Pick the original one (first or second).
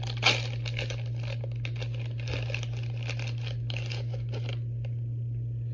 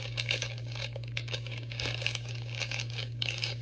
first